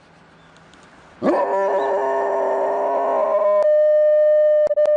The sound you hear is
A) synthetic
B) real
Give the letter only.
B